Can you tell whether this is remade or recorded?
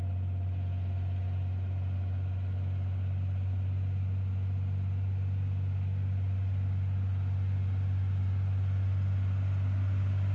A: recorded